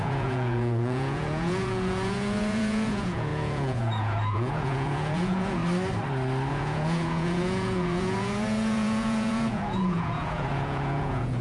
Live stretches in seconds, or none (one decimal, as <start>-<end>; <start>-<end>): 5.6-6.5